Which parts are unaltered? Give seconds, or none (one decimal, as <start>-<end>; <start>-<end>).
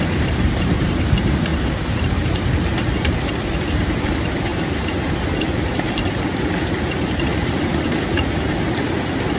none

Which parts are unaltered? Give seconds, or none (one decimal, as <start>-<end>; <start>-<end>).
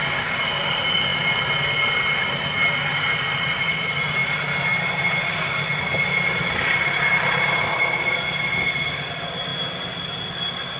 0.0-10.8